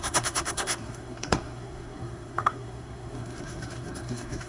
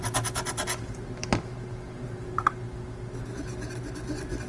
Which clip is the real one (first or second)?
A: second